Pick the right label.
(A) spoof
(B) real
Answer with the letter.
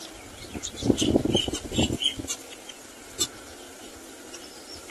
B